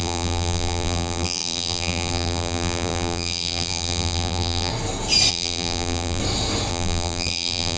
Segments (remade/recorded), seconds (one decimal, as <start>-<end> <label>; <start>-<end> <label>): 0.0-4.7 remade; 4.7-5.3 recorded; 5.3-6.2 remade; 6.2-6.7 recorded; 6.7-7.8 remade